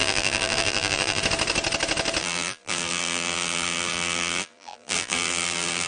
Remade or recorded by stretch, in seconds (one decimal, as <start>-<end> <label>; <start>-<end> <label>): 0.0-1.2 remade; 1.2-2.2 recorded; 2.2-5.9 remade